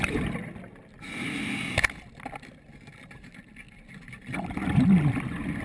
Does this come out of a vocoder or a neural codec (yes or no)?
no